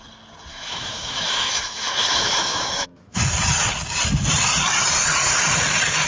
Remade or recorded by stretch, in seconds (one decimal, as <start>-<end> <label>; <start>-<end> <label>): 0.0-0.5 recorded; 0.5-3.2 remade; 3.2-6.1 recorded